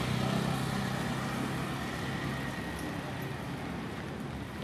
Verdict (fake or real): real